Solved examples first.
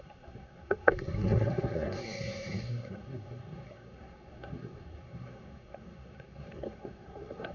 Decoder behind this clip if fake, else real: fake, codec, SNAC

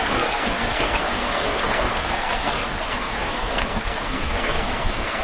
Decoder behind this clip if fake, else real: fake, codec, SNAC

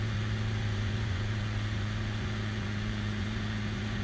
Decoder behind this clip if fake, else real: fake, vocoder, Vocos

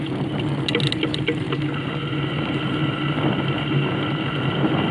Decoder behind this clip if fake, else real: real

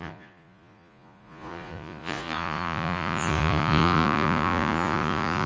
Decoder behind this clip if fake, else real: fake, vocoder, Vocos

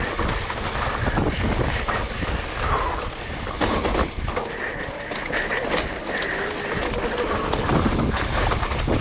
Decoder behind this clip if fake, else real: real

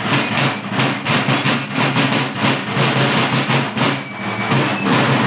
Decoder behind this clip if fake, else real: real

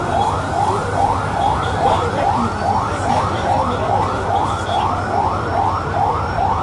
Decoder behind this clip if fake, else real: fake, vocoder, BigVGAN v2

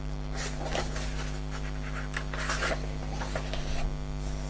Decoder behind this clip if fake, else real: real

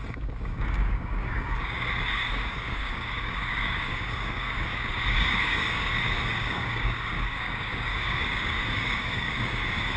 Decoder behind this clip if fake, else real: fake, codec, DAC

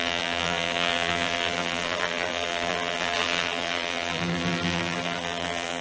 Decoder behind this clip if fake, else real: fake, vocoder, BigVGAN v2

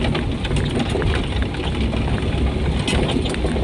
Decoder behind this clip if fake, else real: real